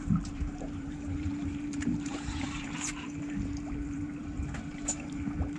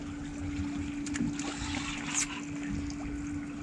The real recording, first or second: second